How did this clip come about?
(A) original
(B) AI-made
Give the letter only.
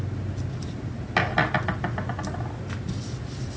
A